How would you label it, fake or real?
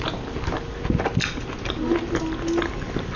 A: real